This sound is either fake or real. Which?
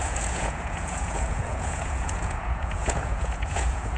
fake